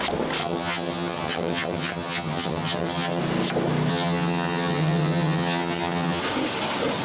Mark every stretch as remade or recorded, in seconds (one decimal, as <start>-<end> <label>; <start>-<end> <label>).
0.0-0.4 recorded; 0.4-3.2 remade; 3.2-3.9 recorded; 3.9-6.2 remade; 6.2-7.0 recorded

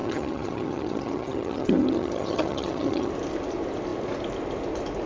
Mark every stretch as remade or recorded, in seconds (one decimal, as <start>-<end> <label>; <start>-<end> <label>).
0.0-3.1 remade; 3.1-5.1 recorded

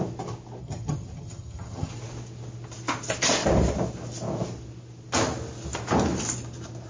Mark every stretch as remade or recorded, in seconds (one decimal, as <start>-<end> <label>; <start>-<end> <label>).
0.0-0.6 recorded; 0.6-1.9 remade; 1.9-6.9 recorded

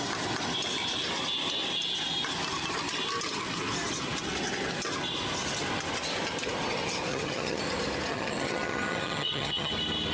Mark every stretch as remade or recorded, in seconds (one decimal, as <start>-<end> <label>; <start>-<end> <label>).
0.0-7.1 recorded; 7.1-7.6 remade; 7.6-8.1 recorded; 8.1-9.7 remade; 9.7-10.1 recorded

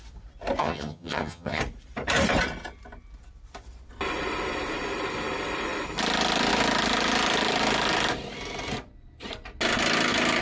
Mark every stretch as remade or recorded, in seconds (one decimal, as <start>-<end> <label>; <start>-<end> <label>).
0.0-0.6 recorded; 0.6-1.6 remade; 1.6-10.4 recorded

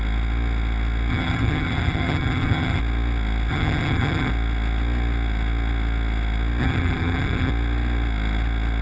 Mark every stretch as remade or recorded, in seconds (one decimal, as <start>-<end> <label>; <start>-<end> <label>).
0.0-1.1 recorded; 1.1-2.8 remade; 2.8-3.5 recorded; 3.5-4.3 remade; 4.3-6.6 recorded; 6.6-7.5 remade; 7.5-8.8 recorded